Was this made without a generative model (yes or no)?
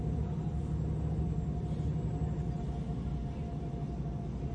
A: yes